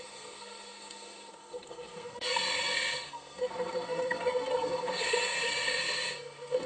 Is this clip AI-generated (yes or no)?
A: yes